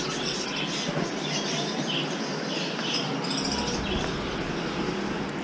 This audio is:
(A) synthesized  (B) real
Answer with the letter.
B